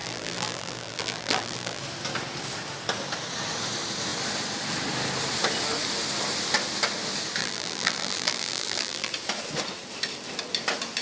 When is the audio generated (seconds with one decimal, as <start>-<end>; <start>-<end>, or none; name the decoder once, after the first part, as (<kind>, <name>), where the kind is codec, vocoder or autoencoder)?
0.0-1.8 (vocoder, BigVGAN v2); 7.4-9.1